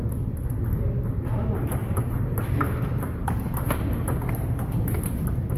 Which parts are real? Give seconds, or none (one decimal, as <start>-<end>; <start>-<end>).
0.0-1.8; 4.8-5.6